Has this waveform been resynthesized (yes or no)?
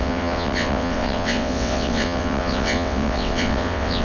yes